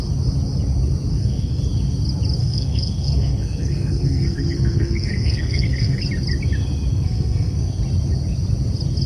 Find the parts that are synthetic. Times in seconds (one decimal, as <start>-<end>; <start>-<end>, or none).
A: 1.1-1.6; 2.4-6.0; 6.9-7.8